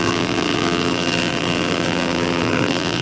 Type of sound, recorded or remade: remade